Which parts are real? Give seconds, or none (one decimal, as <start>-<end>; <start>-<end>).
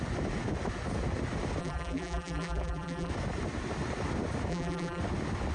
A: 0.0-1.6; 3.1-4.5; 5.0-5.5